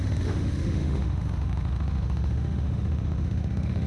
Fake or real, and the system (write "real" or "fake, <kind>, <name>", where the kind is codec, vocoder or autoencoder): fake, autoencoder, DAC-VAE